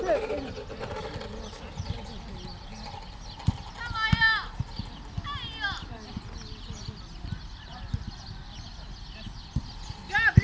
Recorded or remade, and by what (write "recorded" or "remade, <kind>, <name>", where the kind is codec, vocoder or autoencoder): recorded